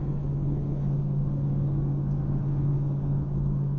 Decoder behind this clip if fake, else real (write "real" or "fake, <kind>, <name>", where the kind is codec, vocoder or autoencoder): fake, codec, SNAC